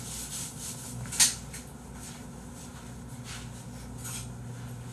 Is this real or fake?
real